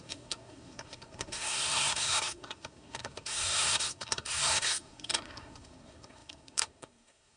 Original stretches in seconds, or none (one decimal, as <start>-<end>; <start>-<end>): none